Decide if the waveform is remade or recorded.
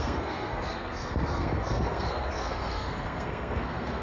remade